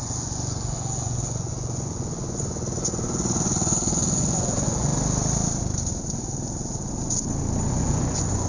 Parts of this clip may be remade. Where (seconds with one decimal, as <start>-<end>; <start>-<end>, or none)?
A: 0.0-4.9; 7.7-8.5